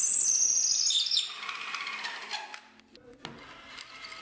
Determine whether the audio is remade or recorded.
recorded